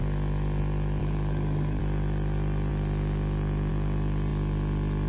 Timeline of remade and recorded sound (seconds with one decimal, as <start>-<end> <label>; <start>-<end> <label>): 0.0-1.0 recorded; 1.0-1.8 remade; 1.8-5.1 recorded